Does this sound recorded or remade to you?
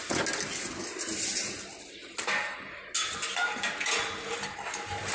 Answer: recorded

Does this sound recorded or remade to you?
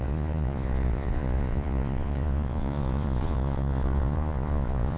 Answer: remade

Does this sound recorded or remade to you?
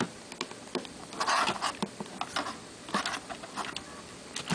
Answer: recorded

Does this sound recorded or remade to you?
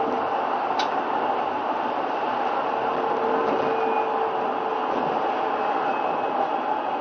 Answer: recorded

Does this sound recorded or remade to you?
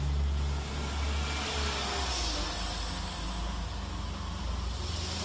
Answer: recorded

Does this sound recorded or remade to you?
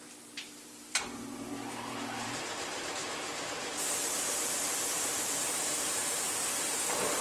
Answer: remade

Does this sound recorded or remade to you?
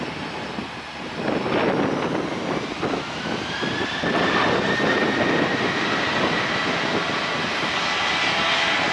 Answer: recorded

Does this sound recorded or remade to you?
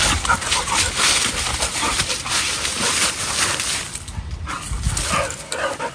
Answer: recorded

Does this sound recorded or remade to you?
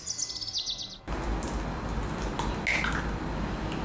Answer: recorded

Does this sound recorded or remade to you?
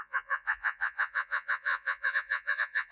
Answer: remade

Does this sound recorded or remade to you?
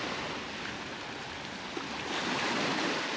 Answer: recorded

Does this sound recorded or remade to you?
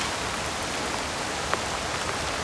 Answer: recorded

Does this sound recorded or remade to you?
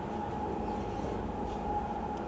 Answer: recorded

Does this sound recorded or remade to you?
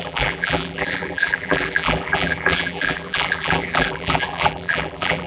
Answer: remade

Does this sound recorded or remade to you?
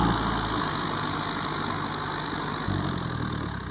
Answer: recorded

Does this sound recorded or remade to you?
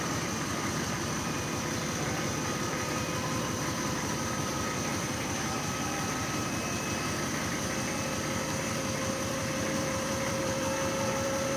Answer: remade